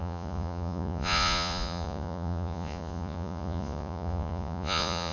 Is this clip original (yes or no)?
no